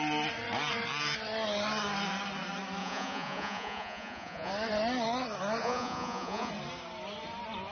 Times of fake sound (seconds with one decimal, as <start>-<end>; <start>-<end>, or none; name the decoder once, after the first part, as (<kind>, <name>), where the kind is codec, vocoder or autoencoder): 2.8-4.5 (vocoder, Vocos); 5.6-6.5